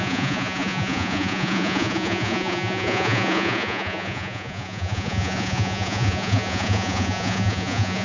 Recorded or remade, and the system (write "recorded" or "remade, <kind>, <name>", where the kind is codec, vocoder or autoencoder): remade, vocoder, Vocos